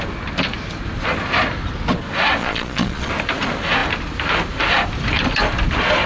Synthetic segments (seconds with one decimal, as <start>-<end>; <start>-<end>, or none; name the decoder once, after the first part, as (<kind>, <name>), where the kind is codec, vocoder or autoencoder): 2.4-3.1 (vocoder, Vocos)